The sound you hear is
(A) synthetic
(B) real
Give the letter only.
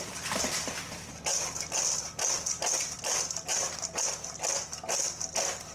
B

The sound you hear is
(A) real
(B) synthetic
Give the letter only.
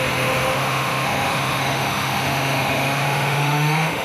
B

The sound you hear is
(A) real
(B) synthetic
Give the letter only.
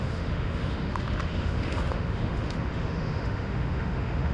B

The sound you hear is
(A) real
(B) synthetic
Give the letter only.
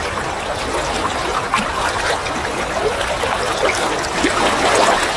A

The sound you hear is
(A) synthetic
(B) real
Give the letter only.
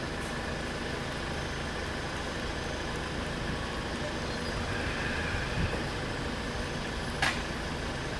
B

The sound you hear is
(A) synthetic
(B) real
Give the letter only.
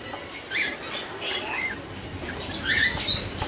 B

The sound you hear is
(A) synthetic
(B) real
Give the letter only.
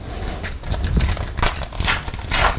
B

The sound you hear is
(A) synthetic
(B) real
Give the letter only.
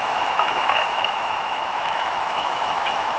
A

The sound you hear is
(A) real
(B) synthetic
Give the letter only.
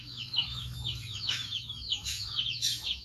B